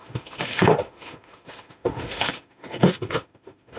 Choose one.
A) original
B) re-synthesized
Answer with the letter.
B